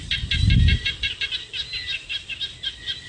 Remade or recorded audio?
recorded